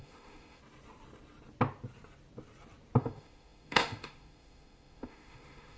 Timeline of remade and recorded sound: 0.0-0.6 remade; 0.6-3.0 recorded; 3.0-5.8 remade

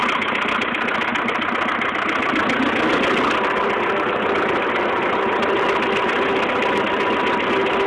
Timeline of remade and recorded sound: 0.0-7.9 recorded

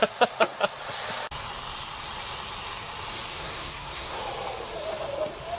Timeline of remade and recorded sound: 0.0-3.3 recorded; 3.3-4.2 remade; 4.2-5.6 recorded

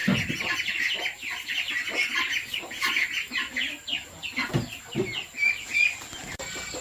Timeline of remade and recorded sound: 0.0-6.8 recorded

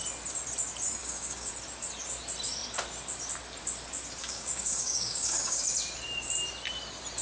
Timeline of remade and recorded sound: 0.0-1.0 recorded; 1.0-1.5 remade; 1.5-4.2 recorded; 4.2-5.6 remade; 5.6-7.2 recorded